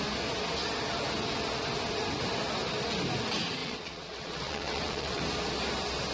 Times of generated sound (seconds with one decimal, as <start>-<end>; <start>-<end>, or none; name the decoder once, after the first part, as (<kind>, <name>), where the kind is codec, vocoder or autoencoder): 3.6-5.2 (vocoder, WaveNeXt)

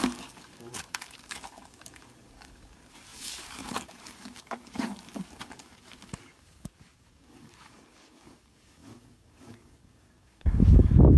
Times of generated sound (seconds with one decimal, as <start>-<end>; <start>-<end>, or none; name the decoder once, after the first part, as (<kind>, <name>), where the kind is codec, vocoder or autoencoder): 0.0-11.2 (codec, DAC)